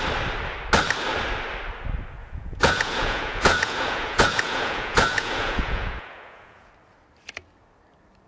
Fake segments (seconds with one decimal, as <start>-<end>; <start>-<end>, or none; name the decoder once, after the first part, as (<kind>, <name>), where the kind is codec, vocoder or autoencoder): 2.2-6.7 (vocoder, Vocos)